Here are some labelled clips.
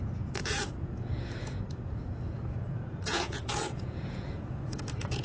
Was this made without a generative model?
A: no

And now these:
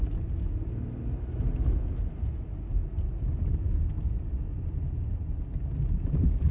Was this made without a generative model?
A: yes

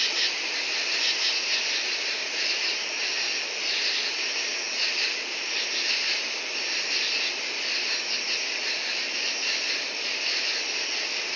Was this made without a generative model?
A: yes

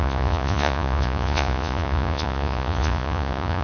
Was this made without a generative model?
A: no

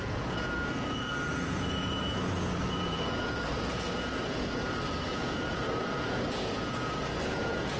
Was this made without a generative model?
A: no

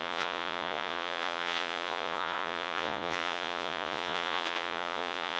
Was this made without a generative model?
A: no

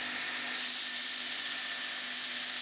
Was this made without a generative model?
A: yes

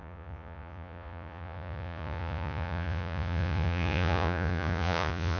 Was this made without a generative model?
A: no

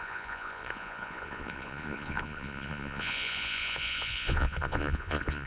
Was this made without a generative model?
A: no